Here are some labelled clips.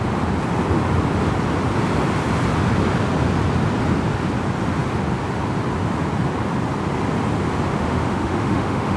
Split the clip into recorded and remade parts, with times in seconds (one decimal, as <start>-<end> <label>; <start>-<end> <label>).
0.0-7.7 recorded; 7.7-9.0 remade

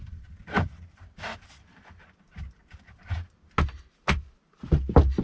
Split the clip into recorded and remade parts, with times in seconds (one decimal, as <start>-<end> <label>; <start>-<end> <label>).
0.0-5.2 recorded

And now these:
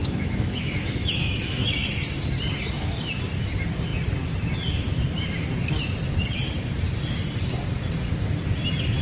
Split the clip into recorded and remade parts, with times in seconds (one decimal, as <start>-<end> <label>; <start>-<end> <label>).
0.0-1.8 remade; 1.8-9.0 recorded

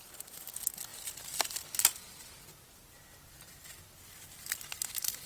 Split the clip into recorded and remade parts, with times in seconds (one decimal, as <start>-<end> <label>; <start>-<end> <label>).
0.0-5.3 recorded

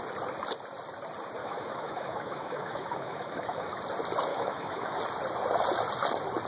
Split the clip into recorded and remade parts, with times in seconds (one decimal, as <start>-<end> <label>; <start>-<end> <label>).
0.0-1.4 recorded; 1.4-3.8 remade; 3.8-4.3 recorded; 4.3-5.0 remade; 5.0-6.5 recorded

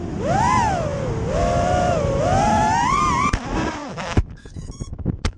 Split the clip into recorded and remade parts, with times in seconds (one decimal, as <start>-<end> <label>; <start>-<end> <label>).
0.0-3.9 recorded; 3.9-5.4 remade

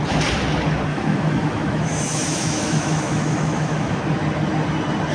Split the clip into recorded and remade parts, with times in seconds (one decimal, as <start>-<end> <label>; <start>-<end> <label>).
0.0-0.9 recorded; 0.9-4.0 remade; 4.0-5.1 recorded

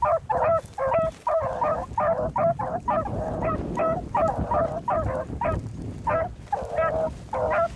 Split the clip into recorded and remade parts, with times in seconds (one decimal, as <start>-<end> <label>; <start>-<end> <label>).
0.0-7.8 recorded